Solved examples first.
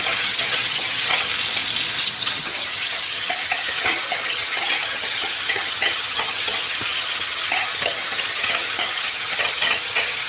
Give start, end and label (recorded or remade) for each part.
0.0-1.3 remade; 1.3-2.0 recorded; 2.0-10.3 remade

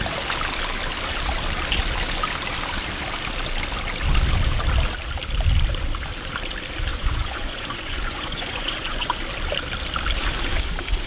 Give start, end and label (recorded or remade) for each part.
0.0-6.9 recorded; 6.9-9.2 remade; 9.2-11.1 recorded

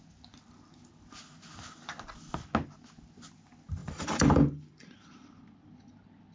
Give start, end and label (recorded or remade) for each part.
0.0-3.8 recorded; 3.8-5.5 remade; 5.5-6.3 recorded

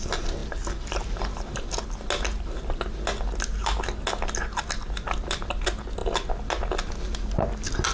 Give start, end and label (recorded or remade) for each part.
0.0-7.9 recorded

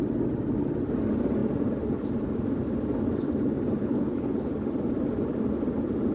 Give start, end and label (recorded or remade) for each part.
0.0-3.8 recorded; 3.8-4.5 remade; 4.5-6.1 recorded

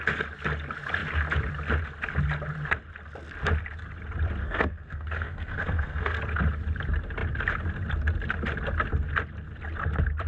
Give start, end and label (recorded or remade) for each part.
0.0-4.4 recorded; 4.4-6.2 remade; 6.2-10.3 recorded

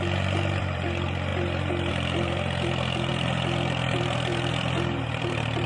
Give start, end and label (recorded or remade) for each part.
0.0-1.3 remade; 1.3-1.9 recorded; 1.9-5.7 remade

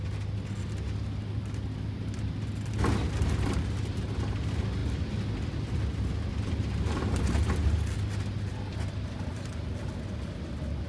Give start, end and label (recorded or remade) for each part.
0.0-10.9 recorded